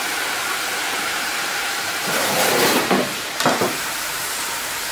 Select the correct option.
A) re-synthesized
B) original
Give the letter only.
A